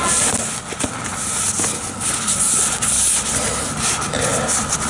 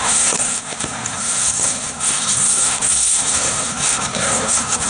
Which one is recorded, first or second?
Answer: first